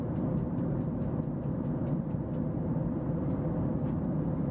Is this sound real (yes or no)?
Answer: yes